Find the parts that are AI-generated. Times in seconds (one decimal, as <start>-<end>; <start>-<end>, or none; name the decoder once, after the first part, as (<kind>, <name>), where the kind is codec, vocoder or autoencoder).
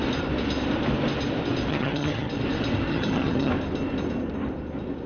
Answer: 1.7-2.3 (vocoder, HiFi-GAN); 2.9-3.5